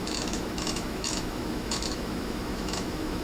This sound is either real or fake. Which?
fake